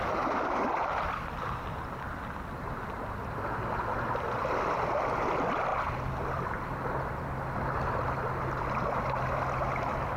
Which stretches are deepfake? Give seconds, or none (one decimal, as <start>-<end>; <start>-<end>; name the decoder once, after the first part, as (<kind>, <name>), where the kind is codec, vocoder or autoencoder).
none